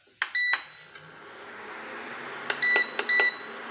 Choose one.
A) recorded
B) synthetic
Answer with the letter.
A